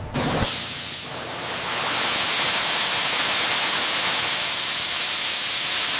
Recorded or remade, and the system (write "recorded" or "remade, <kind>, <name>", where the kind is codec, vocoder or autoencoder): recorded